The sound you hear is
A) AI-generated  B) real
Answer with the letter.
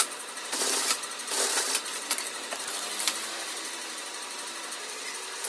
A